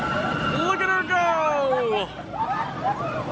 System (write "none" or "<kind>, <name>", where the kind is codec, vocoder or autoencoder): none